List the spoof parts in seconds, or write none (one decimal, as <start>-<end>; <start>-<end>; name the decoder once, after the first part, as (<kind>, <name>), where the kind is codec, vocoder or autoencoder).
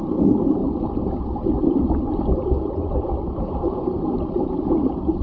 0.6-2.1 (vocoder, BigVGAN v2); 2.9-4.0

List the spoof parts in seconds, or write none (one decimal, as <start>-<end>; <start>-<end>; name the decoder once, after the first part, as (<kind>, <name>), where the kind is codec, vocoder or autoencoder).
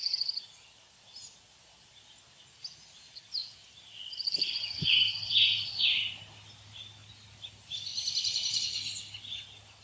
7.9-8.6 (vocoder, BigVGAN v2)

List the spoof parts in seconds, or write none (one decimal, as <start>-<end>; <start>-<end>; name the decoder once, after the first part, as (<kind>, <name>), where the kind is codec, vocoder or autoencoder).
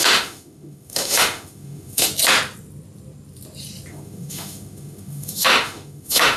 0.0-2.1 (autoencoder, DAC-VAE); 3.9-6.4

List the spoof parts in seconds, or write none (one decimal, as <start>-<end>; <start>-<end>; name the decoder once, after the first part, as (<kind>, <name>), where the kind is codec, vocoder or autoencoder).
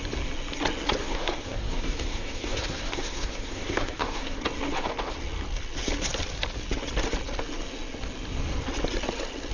1.0-4.4 (codec, SNAC)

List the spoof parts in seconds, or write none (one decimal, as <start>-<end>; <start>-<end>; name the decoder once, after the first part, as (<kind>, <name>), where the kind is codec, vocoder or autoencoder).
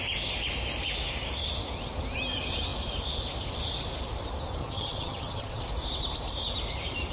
4.6-5.6 (vocoder, HiFi-GAN)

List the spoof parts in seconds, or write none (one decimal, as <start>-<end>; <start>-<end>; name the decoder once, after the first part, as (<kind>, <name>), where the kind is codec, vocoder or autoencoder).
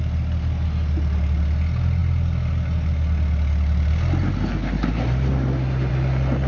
none